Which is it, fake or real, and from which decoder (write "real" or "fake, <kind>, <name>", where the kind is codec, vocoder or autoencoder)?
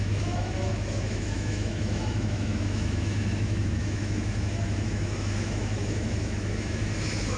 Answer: fake, autoencoder, DAC-VAE